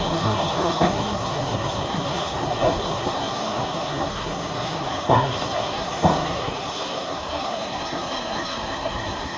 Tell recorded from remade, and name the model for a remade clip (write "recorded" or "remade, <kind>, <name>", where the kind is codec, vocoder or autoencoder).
remade, codec, SNAC